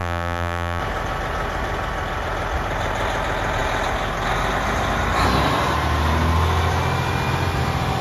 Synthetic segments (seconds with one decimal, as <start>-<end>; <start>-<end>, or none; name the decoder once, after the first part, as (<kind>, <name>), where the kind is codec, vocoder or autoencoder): 0.0-0.8 (vocoder, BigVGAN v2)